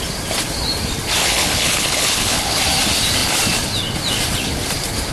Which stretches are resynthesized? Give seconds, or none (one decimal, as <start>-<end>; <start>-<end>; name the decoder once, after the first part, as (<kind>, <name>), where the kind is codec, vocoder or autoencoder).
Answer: 1.2-2.6 (codec, HILCodec)